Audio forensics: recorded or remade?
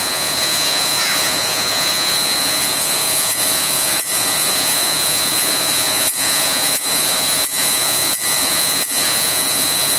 remade